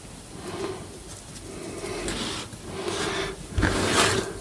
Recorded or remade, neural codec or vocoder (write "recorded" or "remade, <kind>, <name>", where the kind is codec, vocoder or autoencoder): recorded